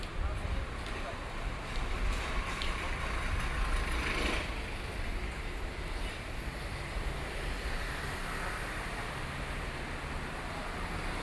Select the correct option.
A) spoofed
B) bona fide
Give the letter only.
B